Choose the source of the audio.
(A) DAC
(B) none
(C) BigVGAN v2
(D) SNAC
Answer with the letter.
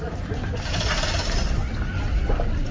B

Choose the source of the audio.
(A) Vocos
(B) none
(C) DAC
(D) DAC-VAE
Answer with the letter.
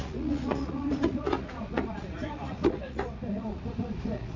A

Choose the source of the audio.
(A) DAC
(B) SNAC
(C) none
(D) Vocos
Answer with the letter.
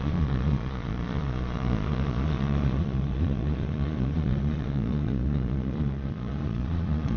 D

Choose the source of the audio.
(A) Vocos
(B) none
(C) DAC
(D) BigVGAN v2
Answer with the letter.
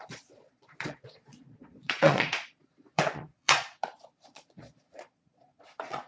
A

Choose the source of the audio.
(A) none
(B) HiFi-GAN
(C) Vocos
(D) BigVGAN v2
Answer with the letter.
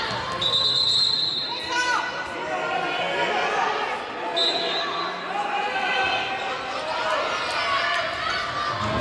A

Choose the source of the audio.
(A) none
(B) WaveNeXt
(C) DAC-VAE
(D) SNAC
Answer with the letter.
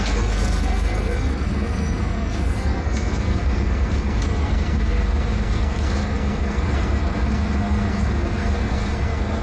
D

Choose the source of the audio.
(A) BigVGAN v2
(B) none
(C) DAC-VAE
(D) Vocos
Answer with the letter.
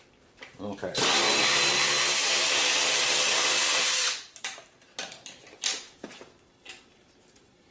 A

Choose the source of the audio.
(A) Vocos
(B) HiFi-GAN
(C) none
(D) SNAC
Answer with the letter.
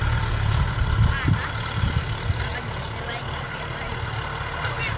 C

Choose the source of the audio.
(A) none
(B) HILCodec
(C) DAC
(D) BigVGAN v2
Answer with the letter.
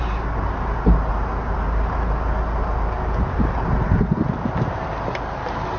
A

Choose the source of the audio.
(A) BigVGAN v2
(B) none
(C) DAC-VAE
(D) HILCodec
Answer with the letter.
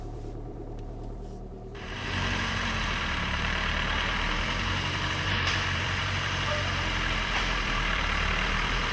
A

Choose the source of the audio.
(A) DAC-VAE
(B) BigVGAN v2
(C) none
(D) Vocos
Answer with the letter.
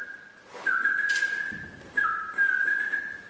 C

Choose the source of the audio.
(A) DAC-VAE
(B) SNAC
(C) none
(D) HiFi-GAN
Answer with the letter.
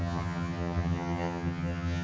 D